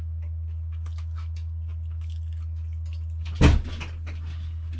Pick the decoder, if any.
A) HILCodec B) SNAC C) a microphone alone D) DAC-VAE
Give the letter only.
C